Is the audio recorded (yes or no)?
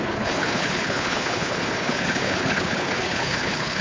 no